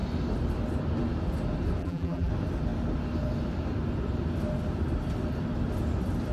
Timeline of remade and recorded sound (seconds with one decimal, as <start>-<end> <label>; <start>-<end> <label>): 0.0-1.8 recorded; 1.8-2.3 remade; 2.3-6.3 recorded